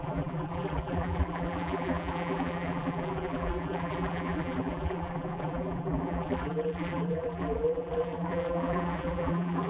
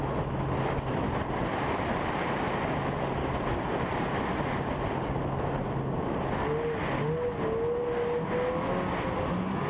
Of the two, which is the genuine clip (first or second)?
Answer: second